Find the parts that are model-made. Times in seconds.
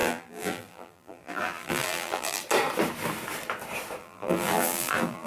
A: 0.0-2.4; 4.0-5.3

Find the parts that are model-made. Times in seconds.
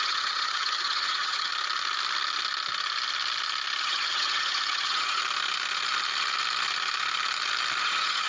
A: 0.0-1.5; 3.8-5.2; 7.8-8.3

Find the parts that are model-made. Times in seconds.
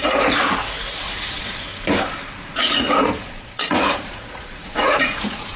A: 0.0-1.7; 2.4-5.6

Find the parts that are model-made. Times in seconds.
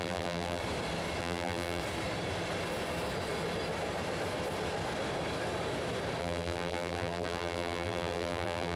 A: 0.0-0.6; 1.2-1.8; 6.2-8.8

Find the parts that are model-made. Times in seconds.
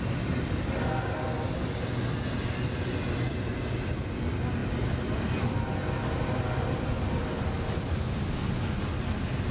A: none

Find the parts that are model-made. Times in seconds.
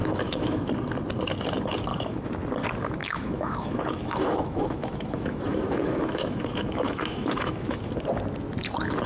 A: 0.0-0.7; 1.9-2.4; 3.0-7.9